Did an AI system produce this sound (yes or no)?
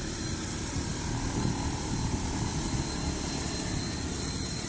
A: no